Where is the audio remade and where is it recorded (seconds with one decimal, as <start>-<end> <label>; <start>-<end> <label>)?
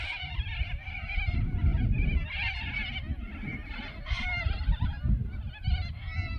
0.0-6.4 recorded